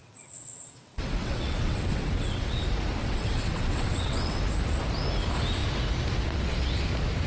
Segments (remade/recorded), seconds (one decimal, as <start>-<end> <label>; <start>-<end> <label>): 0.0-2.6 remade; 2.6-3.0 recorded; 3.0-4.4 remade; 4.4-7.3 recorded